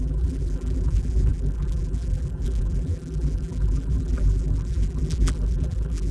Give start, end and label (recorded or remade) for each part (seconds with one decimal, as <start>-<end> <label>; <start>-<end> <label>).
0.0-6.1 remade

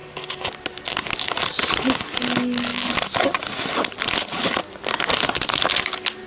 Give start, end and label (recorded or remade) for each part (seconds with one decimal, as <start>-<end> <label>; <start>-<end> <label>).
0.0-6.3 recorded

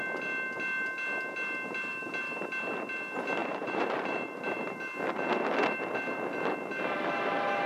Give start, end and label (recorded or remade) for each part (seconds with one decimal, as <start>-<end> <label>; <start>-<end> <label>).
0.0-3.4 recorded; 3.4-4.8 remade; 4.8-7.7 recorded

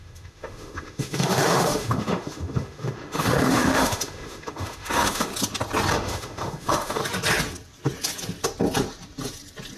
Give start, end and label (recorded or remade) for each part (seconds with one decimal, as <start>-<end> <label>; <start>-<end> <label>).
0.0-5.3 remade; 5.3-5.9 recorded; 5.9-7.0 remade; 7.0-9.8 recorded

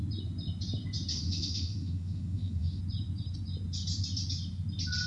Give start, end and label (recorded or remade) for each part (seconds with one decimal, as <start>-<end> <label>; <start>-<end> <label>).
0.0-1.1 recorded; 1.1-2.8 remade; 2.8-5.1 recorded

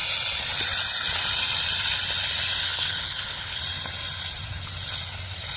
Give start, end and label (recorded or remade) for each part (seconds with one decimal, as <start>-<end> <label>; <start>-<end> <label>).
0.0-2.6 recorded; 2.6-3.6 remade; 3.6-5.6 recorded

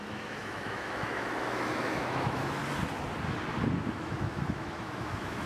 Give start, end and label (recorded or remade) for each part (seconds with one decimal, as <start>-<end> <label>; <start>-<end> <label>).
0.0-2.6 remade; 2.6-3.7 recorded; 3.7-5.5 remade